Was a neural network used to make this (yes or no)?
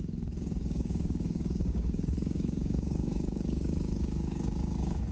yes